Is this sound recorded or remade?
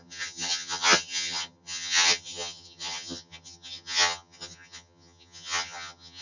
remade